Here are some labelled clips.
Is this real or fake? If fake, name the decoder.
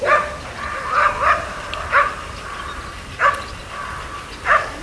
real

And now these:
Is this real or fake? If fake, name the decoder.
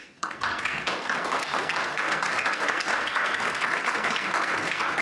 fake, codec, SNAC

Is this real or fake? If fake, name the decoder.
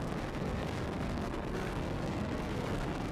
fake, codec, SNAC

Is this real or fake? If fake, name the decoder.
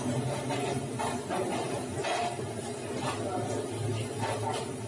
real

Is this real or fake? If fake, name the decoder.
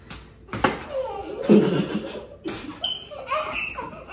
real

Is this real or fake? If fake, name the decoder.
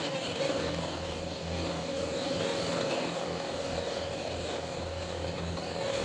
fake, codec, DAC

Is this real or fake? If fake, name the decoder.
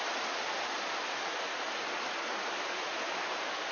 real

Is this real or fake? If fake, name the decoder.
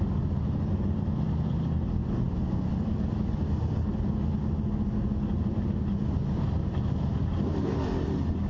real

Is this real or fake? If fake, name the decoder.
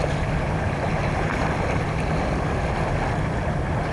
real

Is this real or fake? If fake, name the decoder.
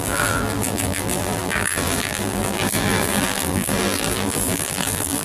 fake, vocoder, BigVGAN v2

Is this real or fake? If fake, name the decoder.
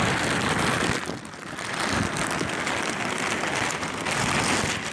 real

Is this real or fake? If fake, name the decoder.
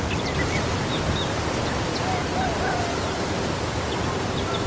fake, vocoder, BigVGAN v2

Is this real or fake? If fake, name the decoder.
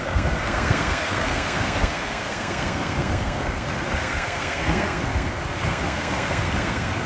fake, codec, SNAC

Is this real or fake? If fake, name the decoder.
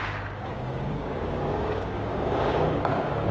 fake, codec, DAC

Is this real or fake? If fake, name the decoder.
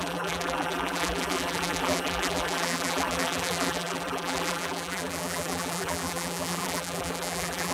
fake, vocoder, BigVGAN v2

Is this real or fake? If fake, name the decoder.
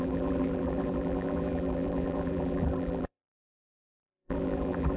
fake, vocoder, BigVGAN v2